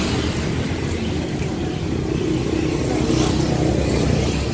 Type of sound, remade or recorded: recorded